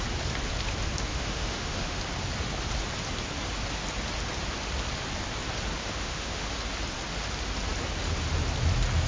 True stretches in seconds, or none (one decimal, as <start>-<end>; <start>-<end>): 0.0-1.1; 2.0-5.8; 6.5-9.1